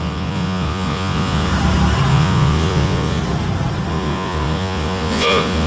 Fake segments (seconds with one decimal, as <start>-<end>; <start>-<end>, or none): 0.0-1.5; 2.1-3.2; 3.9-5.7